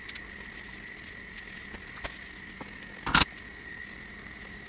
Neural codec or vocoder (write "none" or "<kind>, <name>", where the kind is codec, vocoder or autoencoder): none